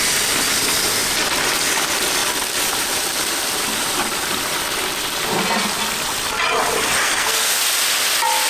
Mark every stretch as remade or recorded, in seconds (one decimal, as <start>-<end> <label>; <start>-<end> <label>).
0.0-7.0 recorded; 7.0-7.5 remade; 7.5-8.5 recorded